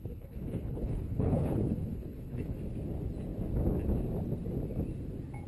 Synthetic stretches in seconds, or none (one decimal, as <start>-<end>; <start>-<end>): 0.0-2.6